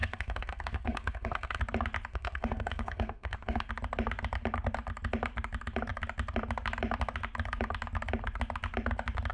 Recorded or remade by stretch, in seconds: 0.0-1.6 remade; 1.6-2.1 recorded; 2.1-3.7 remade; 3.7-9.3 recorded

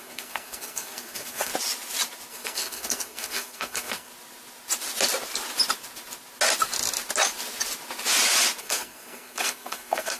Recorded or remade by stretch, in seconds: 0.0-1.5 remade; 1.5-2.3 recorded; 2.3-4.1 remade; 4.1-8.6 recorded; 8.6-10.2 remade

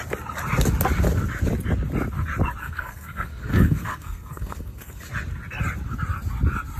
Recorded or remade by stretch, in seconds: 0.0-2.6 recorded; 2.6-5.0 remade; 5.0-6.8 recorded